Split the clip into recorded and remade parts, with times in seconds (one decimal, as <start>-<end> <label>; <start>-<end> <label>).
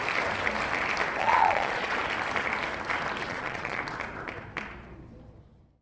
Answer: 0.0-1.2 recorded; 1.2-2.0 remade; 2.0-3.3 recorded; 3.3-3.8 remade; 3.8-5.8 recorded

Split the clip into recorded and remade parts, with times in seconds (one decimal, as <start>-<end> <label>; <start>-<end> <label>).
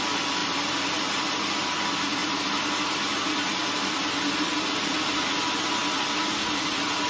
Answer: 0.0-7.1 recorded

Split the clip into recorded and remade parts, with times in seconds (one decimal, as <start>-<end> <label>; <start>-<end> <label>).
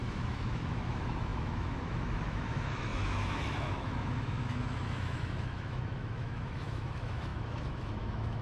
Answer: 0.0-8.4 remade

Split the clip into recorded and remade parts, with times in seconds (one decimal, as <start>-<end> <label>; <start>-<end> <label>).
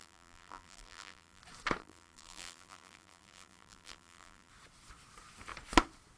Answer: 0.0-1.4 remade; 1.4-1.8 recorded; 1.8-4.5 remade; 4.5-6.2 recorded